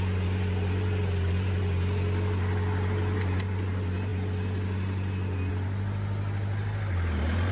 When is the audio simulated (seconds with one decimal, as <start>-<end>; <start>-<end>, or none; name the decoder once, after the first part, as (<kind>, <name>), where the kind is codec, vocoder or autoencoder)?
none